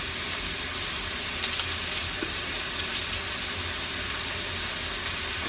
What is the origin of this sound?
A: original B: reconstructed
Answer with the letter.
A